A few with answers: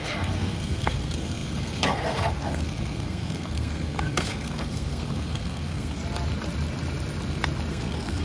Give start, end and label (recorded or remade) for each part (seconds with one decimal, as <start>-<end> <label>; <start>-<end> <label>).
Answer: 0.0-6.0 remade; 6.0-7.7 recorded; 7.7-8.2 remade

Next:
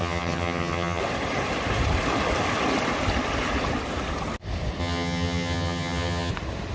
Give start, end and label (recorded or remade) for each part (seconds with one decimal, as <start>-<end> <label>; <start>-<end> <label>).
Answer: 0.0-1.0 remade; 1.0-4.8 recorded; 4.8-6.3 remade; 6.3-6.7 recorded

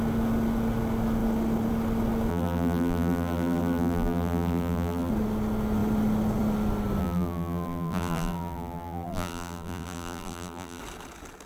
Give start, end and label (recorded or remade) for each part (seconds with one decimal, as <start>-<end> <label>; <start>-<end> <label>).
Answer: 0.0-2.3 recorded; 2.3-5.1 remade; 5.1-7.0 recorded; 7.0-10.8 remade; 10.8-11.5 recorded